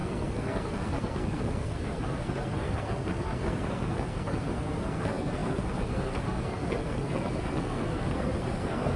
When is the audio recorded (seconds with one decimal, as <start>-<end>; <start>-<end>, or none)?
none